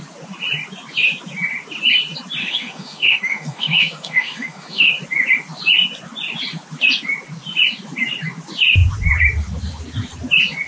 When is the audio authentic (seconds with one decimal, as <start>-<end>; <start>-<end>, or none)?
0.0-2.4; 4.9-10.7